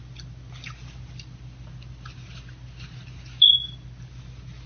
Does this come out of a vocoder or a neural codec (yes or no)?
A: no